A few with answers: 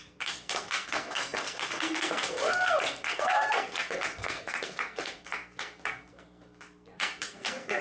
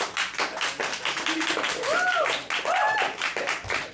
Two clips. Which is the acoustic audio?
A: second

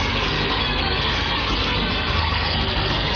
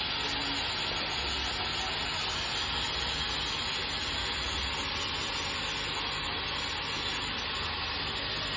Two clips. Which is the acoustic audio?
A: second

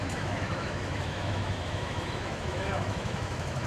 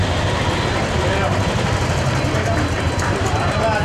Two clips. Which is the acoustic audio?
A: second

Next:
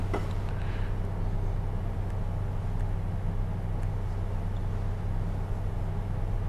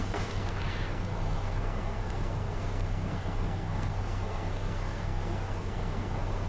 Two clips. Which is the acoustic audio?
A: first